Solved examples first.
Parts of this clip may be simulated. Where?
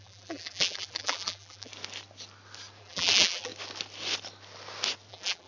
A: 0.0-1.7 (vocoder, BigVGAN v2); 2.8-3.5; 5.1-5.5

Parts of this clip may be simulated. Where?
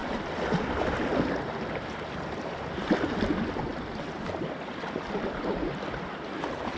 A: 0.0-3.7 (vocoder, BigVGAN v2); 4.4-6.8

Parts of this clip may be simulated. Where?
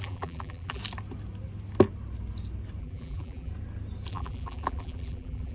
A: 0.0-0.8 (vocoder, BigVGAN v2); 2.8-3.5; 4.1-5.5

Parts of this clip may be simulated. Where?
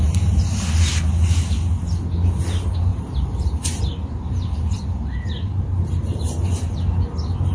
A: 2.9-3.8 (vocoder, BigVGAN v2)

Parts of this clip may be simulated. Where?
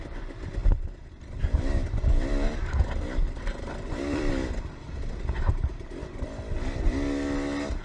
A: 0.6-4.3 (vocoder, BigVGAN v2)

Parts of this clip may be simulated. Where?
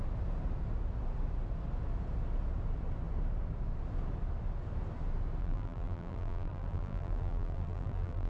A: 5.4-8.3 (vocoder, BigVGAN v2)